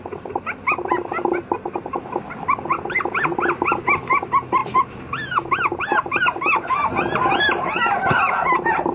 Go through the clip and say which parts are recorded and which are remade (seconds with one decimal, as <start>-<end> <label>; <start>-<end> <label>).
0.0-8.9 recorded

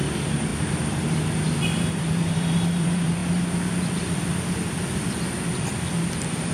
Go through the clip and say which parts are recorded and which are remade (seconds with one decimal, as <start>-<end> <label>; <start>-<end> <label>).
0.0-3.2 remade; 3.2-5.1 recorded; 5.1-6.5 remade